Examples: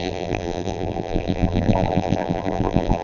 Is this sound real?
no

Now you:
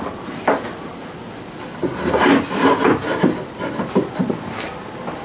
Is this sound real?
yes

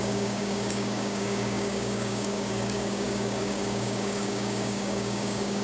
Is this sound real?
no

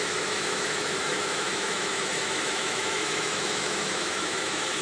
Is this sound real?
no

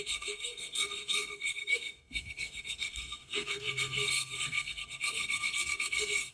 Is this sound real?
no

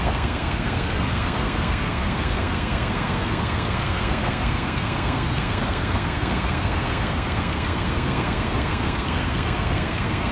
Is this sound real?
no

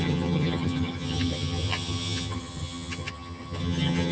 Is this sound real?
no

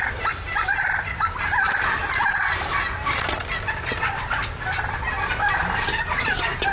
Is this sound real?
yes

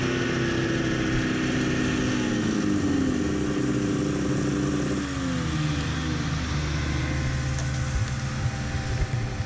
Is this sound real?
yes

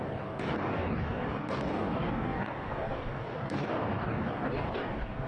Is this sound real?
no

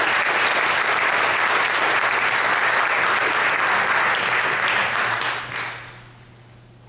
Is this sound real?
yes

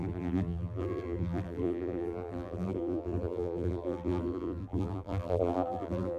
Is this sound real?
no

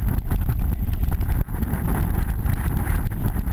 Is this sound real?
yes